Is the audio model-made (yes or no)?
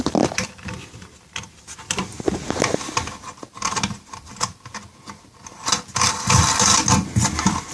no